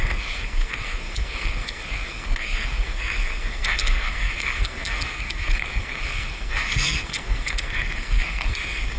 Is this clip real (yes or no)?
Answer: no